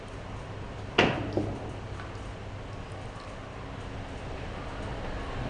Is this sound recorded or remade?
recorded